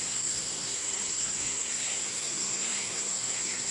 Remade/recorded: remade